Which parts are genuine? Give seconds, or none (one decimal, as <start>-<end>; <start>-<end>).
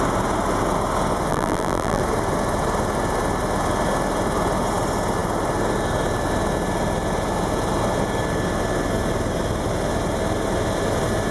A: 0.0-1.3; 2.0-11.3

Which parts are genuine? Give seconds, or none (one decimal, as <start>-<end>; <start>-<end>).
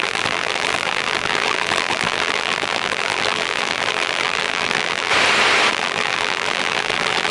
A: 5.1-5.7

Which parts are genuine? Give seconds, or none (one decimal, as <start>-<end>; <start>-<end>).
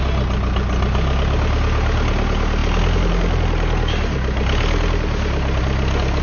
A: 0.0-6.2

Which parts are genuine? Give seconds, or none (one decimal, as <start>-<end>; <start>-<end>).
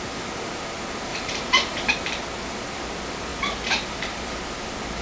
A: 0.0-1.1; 1.9-3.3; 4.3-5.0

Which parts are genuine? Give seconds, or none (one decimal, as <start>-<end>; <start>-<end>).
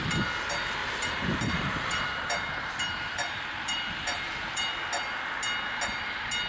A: 0.0-0.8; 4.7-6.5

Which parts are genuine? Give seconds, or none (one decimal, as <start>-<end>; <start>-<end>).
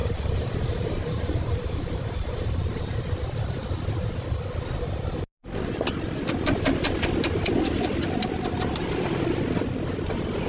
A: 3.0-10.5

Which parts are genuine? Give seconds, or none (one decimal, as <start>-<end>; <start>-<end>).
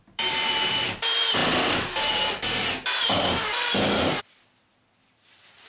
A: none